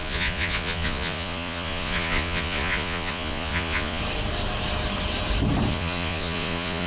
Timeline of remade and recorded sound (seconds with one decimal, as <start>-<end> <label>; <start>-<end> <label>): 0.0-4.0 remade; 4.0-5.7 recorded; 5.7-6.9 remade